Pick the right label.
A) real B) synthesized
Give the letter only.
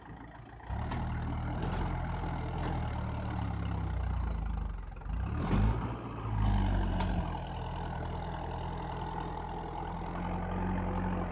A